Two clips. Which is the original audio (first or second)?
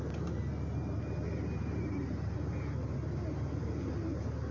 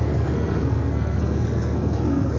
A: first